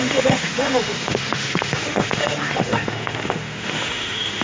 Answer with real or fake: fake